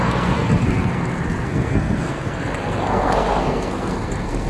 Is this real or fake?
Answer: fake